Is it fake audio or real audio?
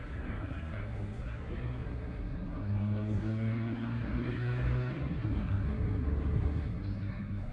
fake